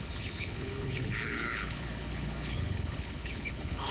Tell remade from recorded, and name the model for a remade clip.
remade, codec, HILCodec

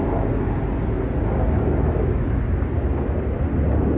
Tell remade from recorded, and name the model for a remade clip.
recorded